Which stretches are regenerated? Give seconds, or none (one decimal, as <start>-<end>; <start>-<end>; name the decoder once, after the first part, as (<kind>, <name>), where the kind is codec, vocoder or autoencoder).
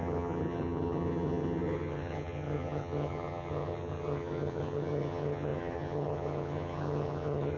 0.0-7.6 (vocoder, HiFi-GAN)